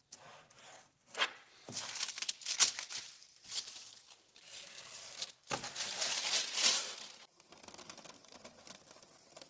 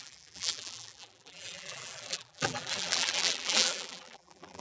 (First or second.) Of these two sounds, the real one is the first